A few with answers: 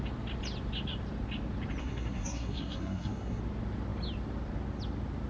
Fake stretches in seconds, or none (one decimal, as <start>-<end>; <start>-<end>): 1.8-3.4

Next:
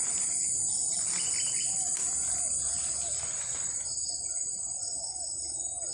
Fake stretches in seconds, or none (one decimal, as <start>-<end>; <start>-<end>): none

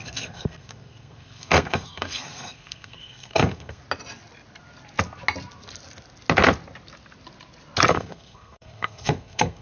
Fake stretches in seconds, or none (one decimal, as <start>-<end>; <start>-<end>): 0.0-3.8; 7.9-9.6

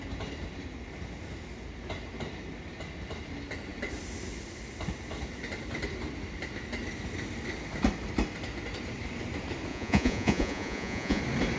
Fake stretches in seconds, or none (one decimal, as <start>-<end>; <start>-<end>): 9.7-11.2

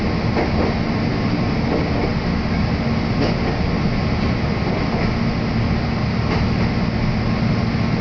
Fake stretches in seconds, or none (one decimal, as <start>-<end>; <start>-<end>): none

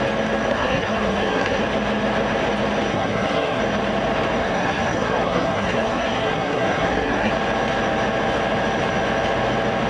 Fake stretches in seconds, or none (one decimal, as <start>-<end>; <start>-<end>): 0.5-1.6; 2.9-3.6; 4.4-7.3